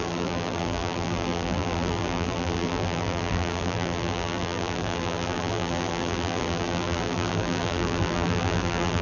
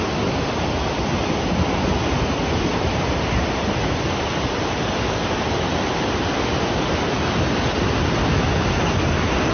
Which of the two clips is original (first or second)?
second